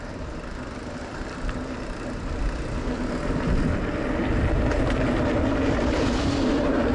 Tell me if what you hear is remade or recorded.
recorded